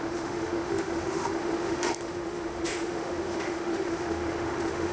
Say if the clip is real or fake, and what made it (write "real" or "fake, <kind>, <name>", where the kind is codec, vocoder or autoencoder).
fake, autoencoder, DAC-VAE